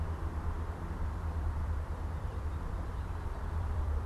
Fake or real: fake